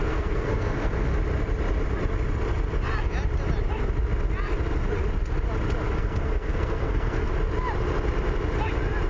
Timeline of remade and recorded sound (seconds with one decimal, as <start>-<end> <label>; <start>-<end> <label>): 0.0-1.1 remade; 1.1-6.0 recorded; 6.0-7.3 remade; 7.3-9.1 recorded